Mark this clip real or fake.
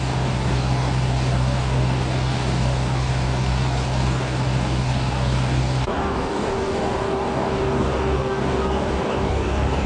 fake